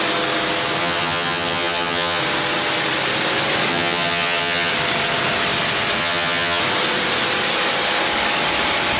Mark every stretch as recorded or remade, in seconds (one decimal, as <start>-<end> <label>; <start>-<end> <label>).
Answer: 0.0-0.8 recorded; 0.8-2.2 remade; 2.2-3.7 recorded; 3.7-4.7 remade; 4.7-6.0 recorded; 6.0-6.6 remade; 6.6-9.0 recorded